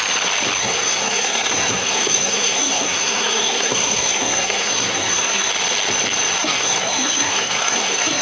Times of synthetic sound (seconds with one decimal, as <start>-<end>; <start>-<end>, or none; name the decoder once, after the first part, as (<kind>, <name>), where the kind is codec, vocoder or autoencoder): 0.6-5.5 (codec, SNAC); 6.4-8.2